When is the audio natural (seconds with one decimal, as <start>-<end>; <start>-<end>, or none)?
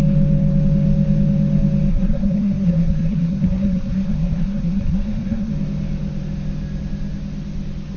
0.0-1.9; 5.5-8.0